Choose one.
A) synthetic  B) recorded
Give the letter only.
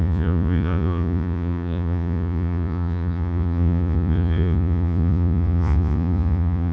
A